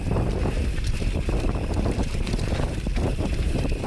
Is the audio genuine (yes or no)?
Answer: no